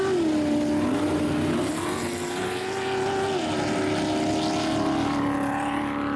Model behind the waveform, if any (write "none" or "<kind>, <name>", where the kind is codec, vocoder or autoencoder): none